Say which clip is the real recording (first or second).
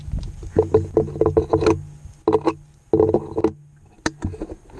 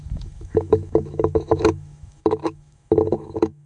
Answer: first